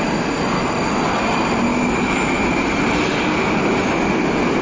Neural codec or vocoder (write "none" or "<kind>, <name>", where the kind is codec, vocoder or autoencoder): none